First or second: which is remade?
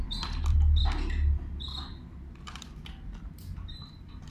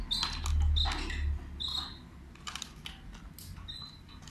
first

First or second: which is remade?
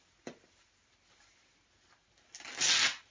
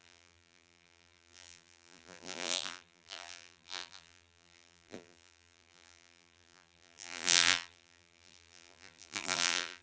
second